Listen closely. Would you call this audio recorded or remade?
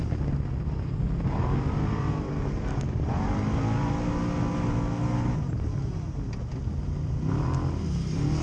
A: recorded